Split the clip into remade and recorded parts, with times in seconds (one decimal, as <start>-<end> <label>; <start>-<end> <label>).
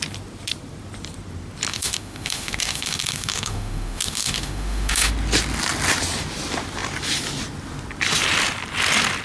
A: 0.0-1.7 recorded; 1.7-5.1 remade; 5.1-9.2 recorded